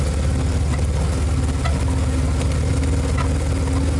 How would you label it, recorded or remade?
recorded